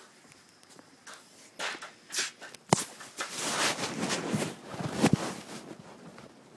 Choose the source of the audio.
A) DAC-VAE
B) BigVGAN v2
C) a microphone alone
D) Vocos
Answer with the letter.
C